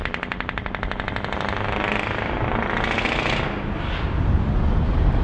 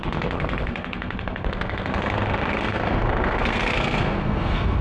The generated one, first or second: second